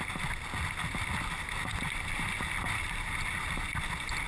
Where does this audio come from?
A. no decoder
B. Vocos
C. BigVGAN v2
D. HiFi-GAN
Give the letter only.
A